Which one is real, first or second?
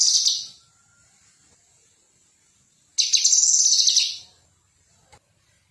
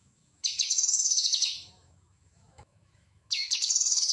first